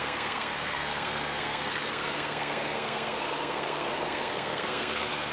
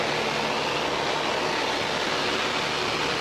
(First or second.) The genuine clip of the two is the second